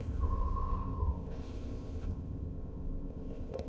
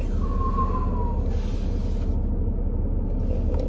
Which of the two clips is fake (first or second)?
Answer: first